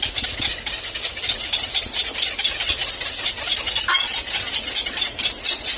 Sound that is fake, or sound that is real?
real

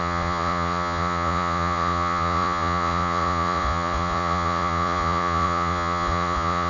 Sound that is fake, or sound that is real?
fake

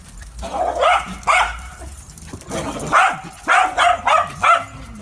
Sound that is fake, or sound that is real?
real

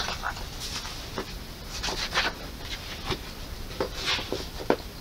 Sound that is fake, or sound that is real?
fake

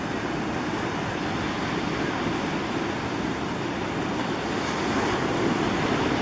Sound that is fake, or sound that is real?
real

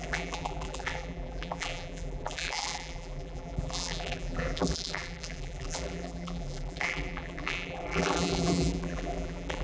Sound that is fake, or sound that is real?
fake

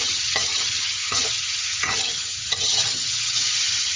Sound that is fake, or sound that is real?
fake